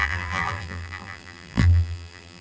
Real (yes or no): no